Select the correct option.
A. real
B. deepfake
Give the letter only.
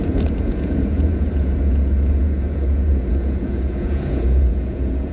B